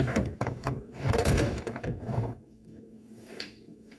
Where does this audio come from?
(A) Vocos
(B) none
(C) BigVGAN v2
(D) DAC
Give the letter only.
D